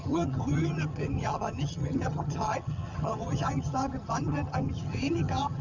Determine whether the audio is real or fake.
fake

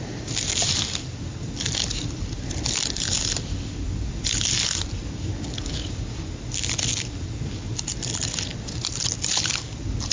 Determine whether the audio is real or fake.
real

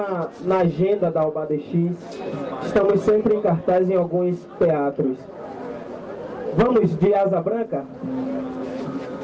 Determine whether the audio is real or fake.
real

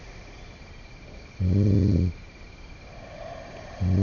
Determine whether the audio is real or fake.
real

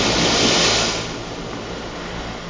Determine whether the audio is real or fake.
real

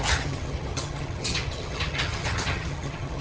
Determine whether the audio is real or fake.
fake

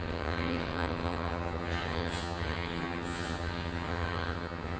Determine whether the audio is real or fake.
fake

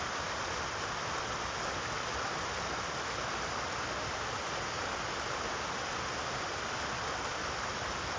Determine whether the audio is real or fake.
real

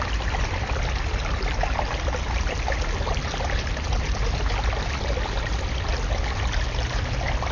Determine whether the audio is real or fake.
real